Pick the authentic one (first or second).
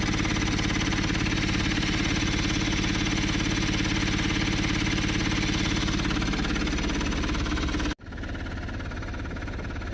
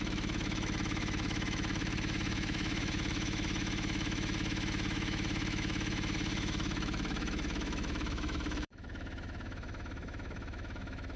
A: first